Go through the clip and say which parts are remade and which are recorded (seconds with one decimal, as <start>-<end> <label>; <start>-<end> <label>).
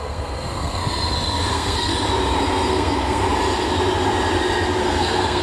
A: 0.0-0.8 remade; 0.8-1.5 recorded; 1.5-1.9 remade; 1.9-2.7 recorded; 2.7-3.2 remade; 3.2-4.8 recorded; 4.8-5.4 remade